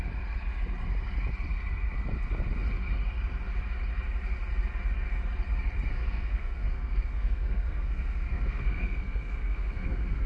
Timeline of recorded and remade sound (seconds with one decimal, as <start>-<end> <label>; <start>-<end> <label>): 0.0-5.9 recorded; 5.9-10.3 remade